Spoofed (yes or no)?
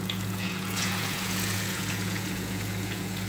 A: yes